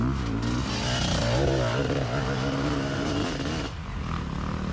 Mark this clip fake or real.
real